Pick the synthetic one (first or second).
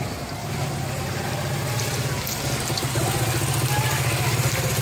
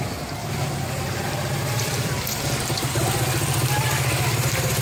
second